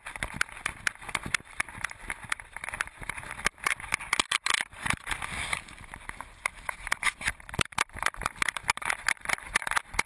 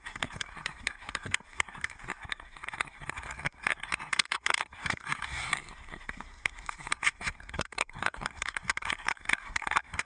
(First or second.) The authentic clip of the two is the first